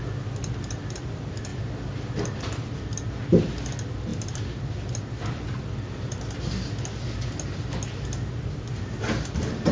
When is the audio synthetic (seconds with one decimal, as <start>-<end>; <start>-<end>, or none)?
none